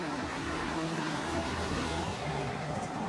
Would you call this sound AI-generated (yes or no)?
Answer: yes